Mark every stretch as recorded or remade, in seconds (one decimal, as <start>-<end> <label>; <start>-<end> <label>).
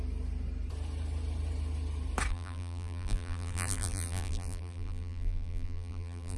0.0-2.3 recorded; 2.3-6.4 remade